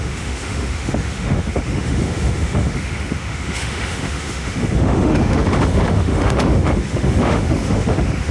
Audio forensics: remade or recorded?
remade